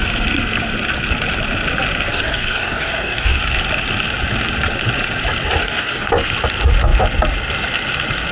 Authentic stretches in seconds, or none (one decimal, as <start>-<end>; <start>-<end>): 0.0-2.1; 3.4-5.6; 6.1-8.3